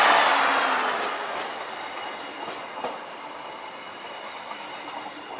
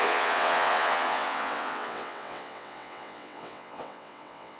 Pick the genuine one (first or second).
first